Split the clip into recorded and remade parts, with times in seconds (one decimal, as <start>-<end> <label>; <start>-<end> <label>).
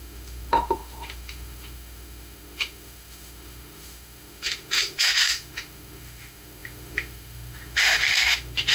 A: 0.0-8.7 remade